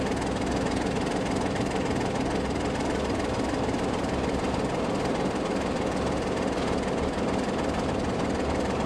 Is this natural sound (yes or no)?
yes